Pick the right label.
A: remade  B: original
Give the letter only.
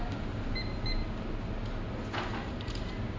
B